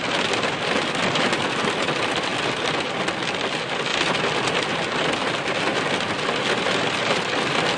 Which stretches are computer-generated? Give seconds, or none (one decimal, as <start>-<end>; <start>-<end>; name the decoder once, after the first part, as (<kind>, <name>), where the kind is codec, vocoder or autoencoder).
5.7-6.9 (vocoder, BigVGAN v2)